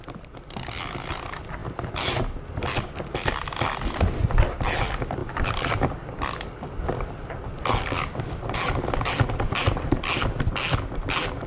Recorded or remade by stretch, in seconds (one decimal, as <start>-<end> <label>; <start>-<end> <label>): 0.0-11.5 recorded